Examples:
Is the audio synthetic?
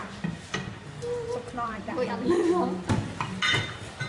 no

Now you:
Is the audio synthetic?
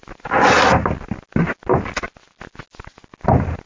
no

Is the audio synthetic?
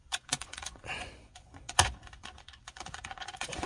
yes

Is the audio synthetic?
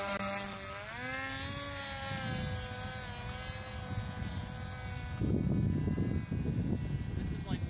no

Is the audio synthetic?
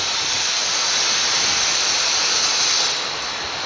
no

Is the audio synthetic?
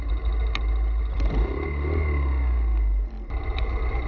no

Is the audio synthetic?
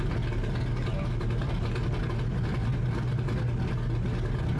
no